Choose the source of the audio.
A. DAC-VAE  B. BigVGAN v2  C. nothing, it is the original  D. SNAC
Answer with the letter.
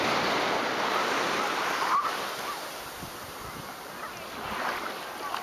C